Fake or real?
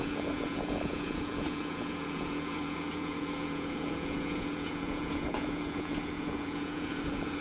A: fake